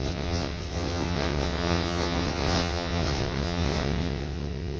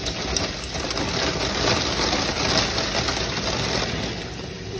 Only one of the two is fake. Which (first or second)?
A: first